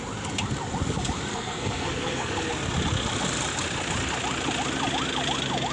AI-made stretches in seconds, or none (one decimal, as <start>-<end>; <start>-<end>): 1.3-2.3